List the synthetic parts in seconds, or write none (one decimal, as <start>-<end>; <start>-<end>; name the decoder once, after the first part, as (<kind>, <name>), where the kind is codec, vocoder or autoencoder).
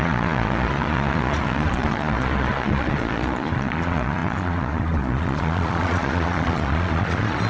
0.0-7.5 (vocoder, Vocos)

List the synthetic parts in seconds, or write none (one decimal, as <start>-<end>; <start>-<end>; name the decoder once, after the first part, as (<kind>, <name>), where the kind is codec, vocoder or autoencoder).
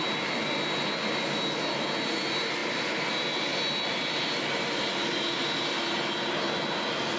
none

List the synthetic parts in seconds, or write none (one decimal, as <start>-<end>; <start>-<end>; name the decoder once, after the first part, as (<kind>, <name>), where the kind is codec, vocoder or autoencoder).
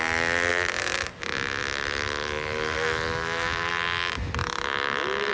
0.5-1.1 (autoencoder, DAC-VAE); 1.6-3.7; 4.4-5.3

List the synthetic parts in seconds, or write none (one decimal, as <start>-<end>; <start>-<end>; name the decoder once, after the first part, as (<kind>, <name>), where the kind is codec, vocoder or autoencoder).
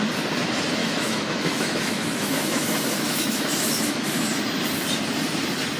0.8-4.3 (autoencoder, DAC-VAE)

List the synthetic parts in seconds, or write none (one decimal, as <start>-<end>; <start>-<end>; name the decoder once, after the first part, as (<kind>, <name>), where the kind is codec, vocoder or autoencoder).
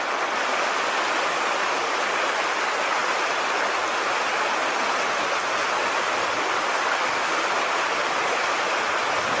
none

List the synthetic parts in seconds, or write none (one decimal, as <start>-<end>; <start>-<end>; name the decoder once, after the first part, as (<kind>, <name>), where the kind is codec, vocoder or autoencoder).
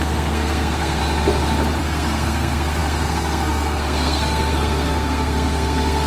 0.0-1.0 (codec, SNAC); 1.8-6.1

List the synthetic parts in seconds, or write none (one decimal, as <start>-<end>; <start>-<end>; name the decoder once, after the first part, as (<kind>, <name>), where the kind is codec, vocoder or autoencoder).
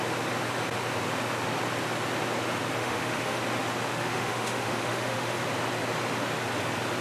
2.8-3.4 (autoencoder, DAC-VAE); 3.9-5.4